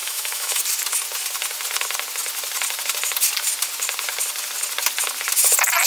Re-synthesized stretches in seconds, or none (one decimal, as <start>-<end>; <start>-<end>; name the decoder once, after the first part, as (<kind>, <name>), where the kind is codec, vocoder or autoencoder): 0.0-0.6 (autoencoder, DAC-VAE)